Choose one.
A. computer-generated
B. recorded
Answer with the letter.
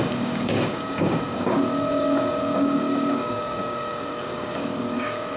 A